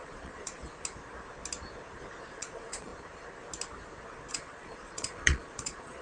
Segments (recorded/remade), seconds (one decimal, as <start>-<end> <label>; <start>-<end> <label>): 0.0-0.6 remade; 0.6-2.3 recorded; 2.3-2.9 remade; 2.9-4.3 recorded; 4.3-6.0 remade